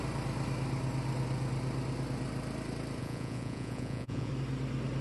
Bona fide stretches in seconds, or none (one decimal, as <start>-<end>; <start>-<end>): 0.0-3.0; 4.3-5.0